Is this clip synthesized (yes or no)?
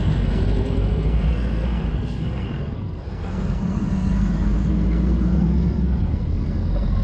yes